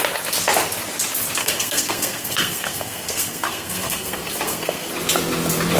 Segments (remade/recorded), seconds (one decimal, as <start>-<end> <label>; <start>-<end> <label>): 0.0-1.4 recorded; 1.4-4.9 remade; 4.9-5.8 recorded